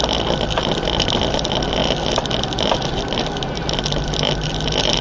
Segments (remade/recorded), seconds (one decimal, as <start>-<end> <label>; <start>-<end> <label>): 0.0-5.0 recorded